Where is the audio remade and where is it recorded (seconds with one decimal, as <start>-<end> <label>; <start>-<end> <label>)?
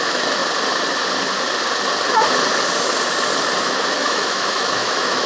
0.0-0.4 remade; 0.4-3.6 recorded; 3.6-5.3 remade